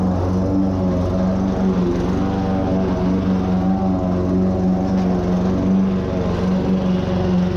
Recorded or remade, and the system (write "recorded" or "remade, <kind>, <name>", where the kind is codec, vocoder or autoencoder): recorded